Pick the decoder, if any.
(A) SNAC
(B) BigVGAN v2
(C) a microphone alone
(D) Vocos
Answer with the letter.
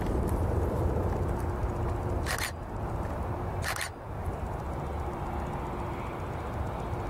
C